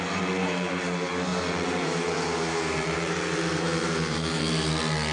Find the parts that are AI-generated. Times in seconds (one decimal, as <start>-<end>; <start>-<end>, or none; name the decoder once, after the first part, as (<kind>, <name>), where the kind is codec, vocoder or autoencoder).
1.3-4.4 (vocoder, BigVGAN v2)